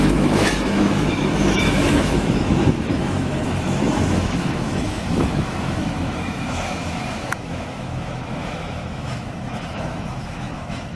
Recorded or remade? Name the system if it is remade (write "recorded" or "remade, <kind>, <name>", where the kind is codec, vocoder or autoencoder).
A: remade, autoencoder, DAC-VAE